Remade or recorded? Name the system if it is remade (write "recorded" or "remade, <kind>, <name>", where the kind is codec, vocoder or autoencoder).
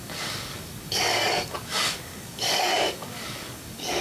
remade, codec, DAC